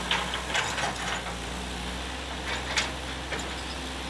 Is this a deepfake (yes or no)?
no